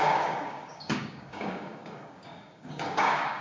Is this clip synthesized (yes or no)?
yes